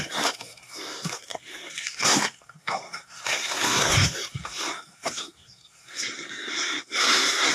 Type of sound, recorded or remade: remade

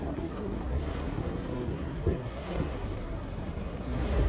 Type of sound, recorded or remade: remade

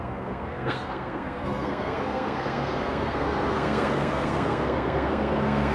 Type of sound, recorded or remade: remade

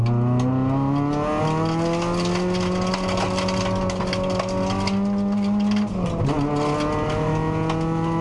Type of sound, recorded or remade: recorded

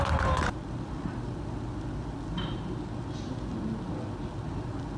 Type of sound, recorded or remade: recorded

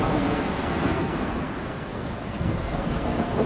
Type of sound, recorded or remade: remade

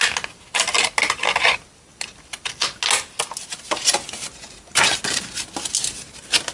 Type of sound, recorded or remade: recorded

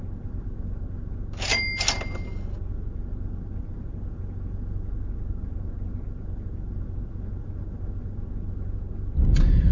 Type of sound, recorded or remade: recorded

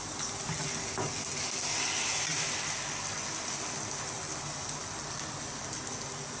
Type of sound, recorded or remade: recorded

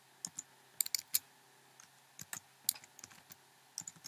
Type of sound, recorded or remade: recorded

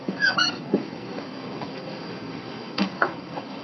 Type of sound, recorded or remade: remade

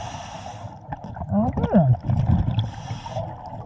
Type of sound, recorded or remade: recorded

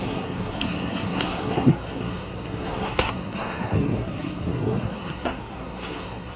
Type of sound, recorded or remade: remade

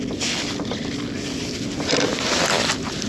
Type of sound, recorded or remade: recorded